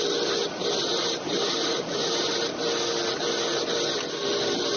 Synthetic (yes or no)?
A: no